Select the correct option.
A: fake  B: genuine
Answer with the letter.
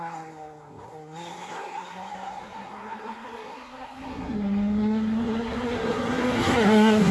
A